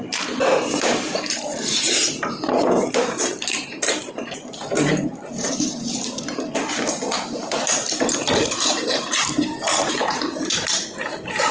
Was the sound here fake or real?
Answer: fake